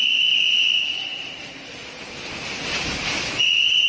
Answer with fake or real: fake